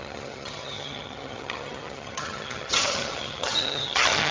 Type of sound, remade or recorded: remade